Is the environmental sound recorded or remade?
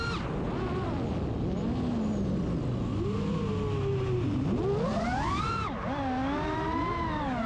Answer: recorded